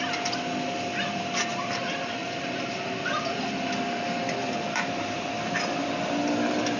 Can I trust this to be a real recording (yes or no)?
yes